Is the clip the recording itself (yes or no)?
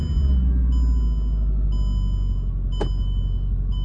yes